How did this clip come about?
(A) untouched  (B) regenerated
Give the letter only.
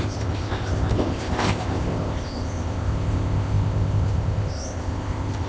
B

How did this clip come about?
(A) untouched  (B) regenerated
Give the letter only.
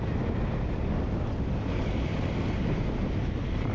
B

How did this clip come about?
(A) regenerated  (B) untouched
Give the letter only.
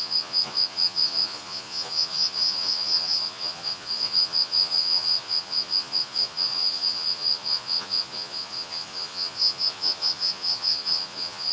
A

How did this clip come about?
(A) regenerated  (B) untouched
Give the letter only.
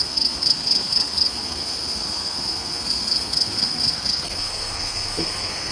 A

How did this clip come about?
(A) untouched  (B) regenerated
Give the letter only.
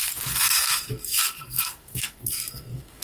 B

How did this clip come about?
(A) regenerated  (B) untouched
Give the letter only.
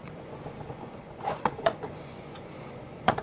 A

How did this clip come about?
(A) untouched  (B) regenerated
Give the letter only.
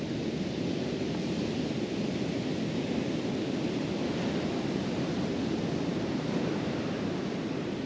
A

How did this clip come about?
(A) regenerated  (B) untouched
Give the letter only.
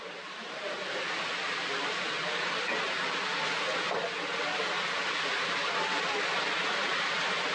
B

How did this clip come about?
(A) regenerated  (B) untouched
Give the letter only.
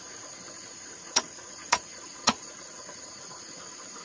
A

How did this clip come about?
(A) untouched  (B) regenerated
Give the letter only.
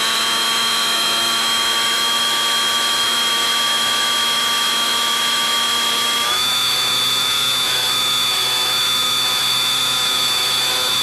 B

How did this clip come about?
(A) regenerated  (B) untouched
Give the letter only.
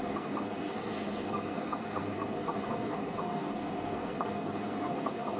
A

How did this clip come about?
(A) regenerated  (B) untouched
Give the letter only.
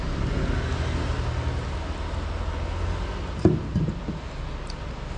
B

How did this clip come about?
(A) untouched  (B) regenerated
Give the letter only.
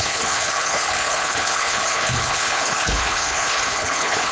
B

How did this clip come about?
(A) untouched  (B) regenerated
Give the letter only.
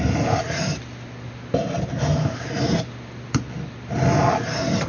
A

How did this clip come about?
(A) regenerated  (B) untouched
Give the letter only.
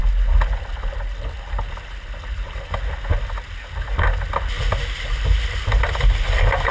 B